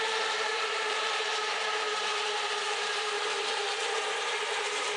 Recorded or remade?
remade